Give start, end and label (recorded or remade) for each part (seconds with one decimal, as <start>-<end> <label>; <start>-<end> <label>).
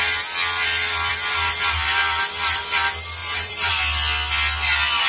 0.0-3.2 recorded; 3.2-3.7 remade; 3.7-5.1 recorded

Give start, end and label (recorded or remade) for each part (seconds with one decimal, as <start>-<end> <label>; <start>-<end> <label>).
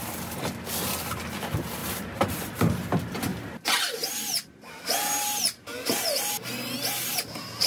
0.0-1.8 recorded; 1.8-2.5 remade; 2.5-7.7 recorded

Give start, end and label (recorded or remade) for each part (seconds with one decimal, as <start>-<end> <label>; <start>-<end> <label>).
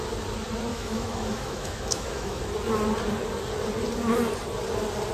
0.0-0.7 recorded; 0.7-2.4 remade; 2.4-5.1 recorded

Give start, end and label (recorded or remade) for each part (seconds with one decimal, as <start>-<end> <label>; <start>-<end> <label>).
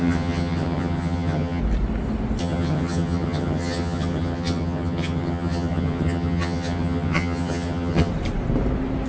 0.0-1.6 remade; 1.6-2.4 recorded; 2.4-8.1 remade; 8.1-9.1 recorded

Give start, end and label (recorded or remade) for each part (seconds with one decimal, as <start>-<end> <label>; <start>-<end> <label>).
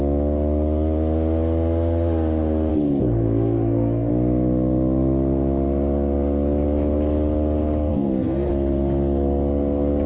0.0-2.7 recorded; 2.7-4.1 remade; 4.1-7.9 recorded; 7.9-8.5 remade; 8.5-10.1 recorded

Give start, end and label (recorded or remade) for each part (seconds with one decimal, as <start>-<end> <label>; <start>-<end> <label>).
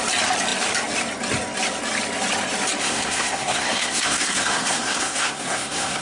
0.0-2.8 recorded; 2.8-6.0 remade